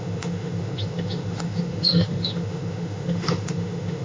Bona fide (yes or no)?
no